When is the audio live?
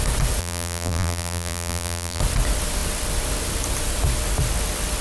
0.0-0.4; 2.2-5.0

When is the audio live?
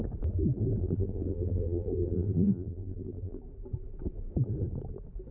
0.0-0.8; 3.4-5.3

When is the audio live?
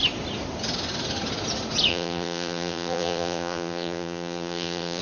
0.0-1.9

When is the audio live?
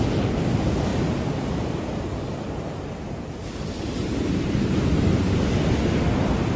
0.0-6.6